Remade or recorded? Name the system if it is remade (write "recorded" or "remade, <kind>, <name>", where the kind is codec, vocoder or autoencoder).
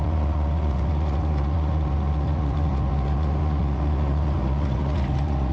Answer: remade, vocoder, Vocos